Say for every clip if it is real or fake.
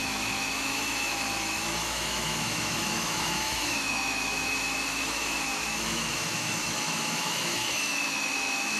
fake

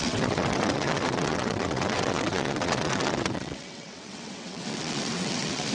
fake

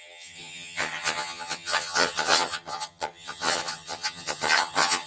fake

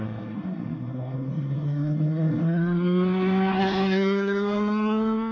fake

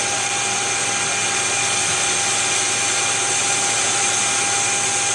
real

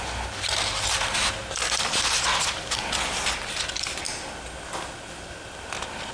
real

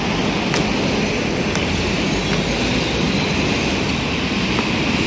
real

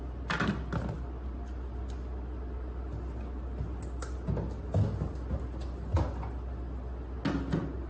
real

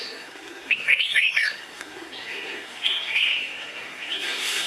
fake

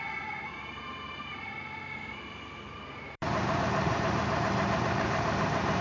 fake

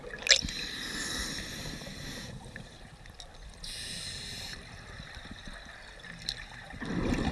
real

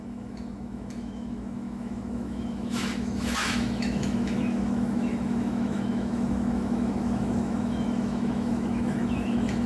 fake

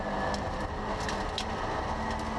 real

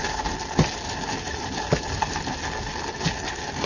real